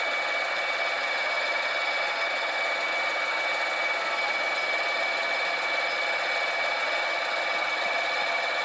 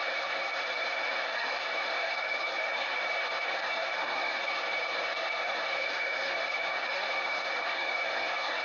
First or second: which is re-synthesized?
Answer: second